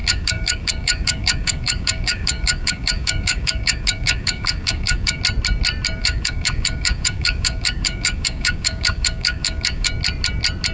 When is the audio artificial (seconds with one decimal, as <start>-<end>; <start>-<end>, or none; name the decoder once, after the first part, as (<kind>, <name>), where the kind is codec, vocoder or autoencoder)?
0.0-5.2 (codec, DAC); 6.0-9.9